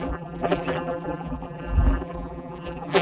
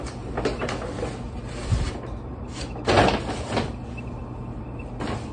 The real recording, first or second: second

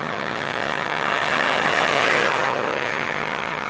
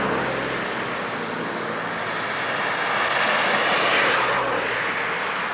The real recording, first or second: second